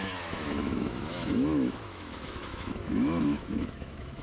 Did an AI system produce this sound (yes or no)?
yes